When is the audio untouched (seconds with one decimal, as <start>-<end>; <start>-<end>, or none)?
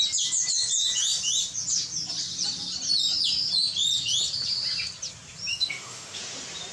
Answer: 0.0-5.5; 6.2-6.7